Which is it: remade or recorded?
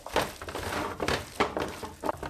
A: recorded